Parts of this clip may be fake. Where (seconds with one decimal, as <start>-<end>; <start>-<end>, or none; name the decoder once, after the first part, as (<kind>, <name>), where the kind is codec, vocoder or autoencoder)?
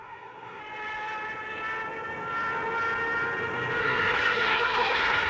0.0-0.6 (codec, SNAC); 3.8-5.3